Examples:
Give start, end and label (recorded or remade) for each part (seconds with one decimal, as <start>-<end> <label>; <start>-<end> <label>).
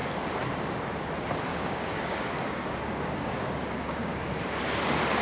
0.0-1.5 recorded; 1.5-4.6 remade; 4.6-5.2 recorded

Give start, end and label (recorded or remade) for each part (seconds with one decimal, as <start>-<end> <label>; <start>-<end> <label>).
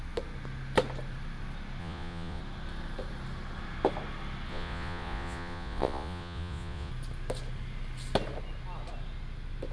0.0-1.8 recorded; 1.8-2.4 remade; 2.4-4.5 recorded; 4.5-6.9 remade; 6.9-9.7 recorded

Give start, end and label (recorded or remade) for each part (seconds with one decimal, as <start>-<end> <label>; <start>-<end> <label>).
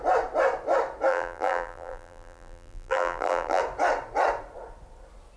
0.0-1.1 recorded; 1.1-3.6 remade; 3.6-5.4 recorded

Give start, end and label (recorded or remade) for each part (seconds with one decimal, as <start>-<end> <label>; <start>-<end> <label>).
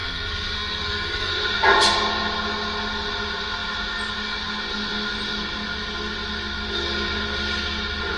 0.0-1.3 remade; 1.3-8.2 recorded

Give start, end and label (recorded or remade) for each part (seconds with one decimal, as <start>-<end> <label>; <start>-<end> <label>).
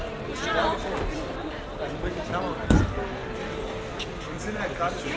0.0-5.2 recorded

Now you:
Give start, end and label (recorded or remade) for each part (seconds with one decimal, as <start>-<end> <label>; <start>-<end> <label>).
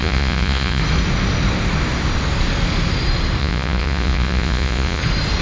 0.0-0.8 remade; 0.8-3.4 recorded; 3.4-5.0 remade; 5.0-5.4 recorded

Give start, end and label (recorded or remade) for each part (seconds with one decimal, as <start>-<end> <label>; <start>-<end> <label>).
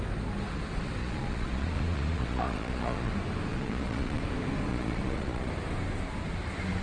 0.0-1.0 recorded; 1.0-3.1 remade; 3.1-3.5 recorded; 3.5-4.2 remade; 4.2-4.7 recorded; 4.7-5.5 remade; 5.5-6.8 recorded